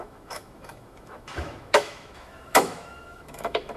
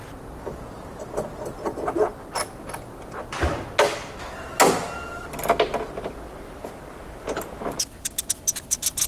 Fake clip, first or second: first